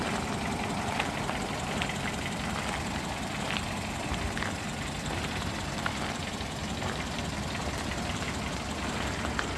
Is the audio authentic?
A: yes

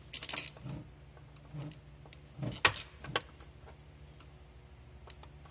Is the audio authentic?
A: yes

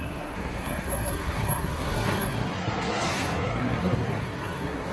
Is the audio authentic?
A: no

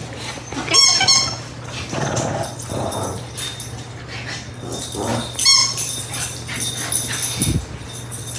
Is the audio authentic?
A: yes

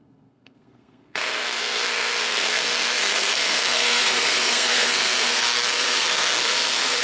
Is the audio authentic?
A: no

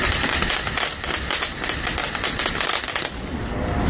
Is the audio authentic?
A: yes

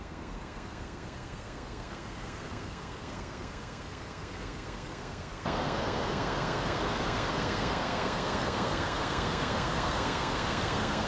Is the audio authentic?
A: no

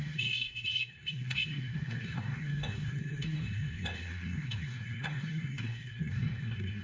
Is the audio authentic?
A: no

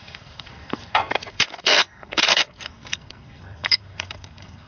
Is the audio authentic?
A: no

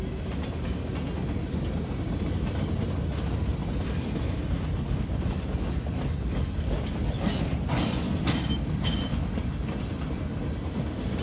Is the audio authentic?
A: yes